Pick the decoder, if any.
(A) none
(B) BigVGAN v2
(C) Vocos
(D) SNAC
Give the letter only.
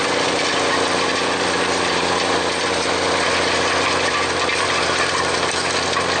B